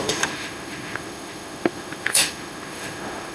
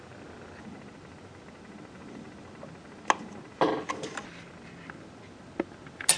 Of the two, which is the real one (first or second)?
second